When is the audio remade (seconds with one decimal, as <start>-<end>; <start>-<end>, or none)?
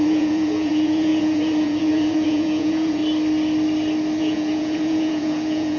0.0-3.0; 4.2-5.8